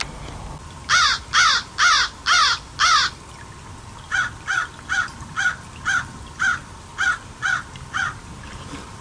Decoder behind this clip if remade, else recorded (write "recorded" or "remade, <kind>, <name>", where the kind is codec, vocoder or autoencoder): recorded